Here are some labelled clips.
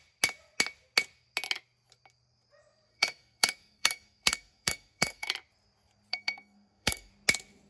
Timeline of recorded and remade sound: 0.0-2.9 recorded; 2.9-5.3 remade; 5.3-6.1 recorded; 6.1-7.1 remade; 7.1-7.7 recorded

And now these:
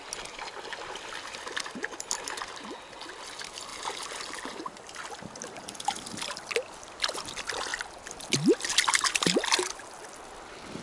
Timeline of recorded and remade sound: 0.0-10.8 recorded

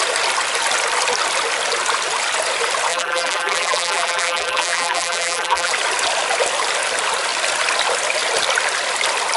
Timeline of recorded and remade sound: 0.0-2.9 recorded; 2.9-5.7 remade; 5.7-9.4 recorded

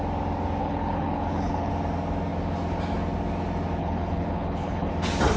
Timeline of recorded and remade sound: 0.0-0.6 recorded; 0.6-1.7 remade; 1.7-3.8 recorded; 3.8-4.9 remade; 4.9-5.4 recorded

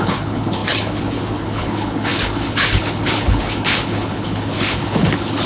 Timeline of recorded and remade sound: 0.0-5.5 remade